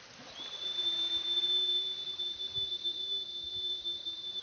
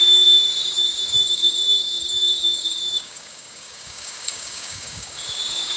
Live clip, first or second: first